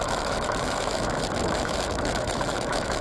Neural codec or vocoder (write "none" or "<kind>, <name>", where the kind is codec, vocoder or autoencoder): autoencoder, DAC-VAE